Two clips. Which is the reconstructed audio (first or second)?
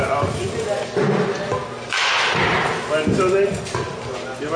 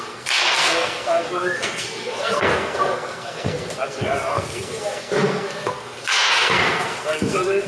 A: second